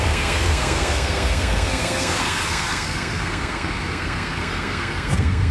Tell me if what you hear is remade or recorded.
remade